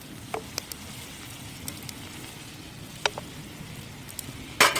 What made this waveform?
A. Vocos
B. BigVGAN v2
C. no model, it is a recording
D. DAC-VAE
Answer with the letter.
C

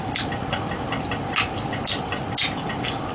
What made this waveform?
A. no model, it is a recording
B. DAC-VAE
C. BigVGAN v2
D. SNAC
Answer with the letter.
A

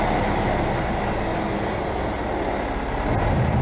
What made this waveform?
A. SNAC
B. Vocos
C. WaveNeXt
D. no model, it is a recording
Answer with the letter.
D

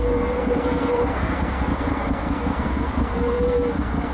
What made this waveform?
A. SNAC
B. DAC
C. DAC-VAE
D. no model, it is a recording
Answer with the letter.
A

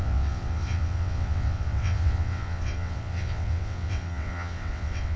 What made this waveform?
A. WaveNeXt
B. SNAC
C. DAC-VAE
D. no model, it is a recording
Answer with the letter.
A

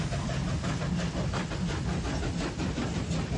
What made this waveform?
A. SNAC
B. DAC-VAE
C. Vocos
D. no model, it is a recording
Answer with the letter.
D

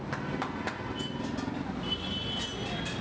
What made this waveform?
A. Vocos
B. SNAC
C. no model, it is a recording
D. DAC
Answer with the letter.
C